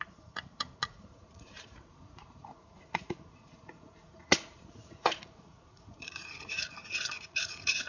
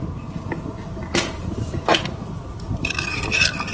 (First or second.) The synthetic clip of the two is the first